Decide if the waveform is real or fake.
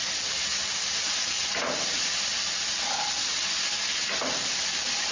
real